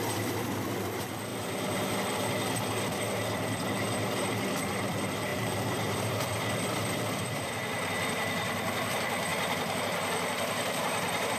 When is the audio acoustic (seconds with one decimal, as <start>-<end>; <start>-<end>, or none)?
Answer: 0.0-1.3; 2.0-5.3; 6.3-11.4